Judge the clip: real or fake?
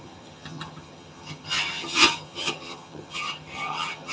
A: fake